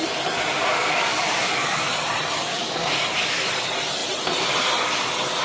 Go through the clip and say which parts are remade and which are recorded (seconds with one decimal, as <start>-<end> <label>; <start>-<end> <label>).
0.0-0.7 recorded; 0.7-1.9 remade; 1.9-2.4 recorded; 2.4-2.9 remade; 2.9-5.4 recorded